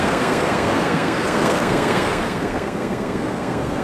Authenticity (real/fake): fake